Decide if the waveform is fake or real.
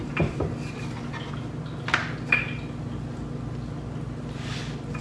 real